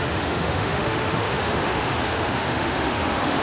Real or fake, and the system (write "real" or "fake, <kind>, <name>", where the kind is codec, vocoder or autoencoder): fake, autoencoder, DAC-VAE